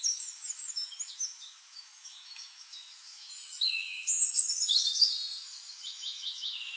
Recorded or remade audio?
remade